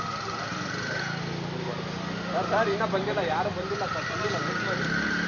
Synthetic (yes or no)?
no